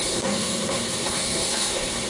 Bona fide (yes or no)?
no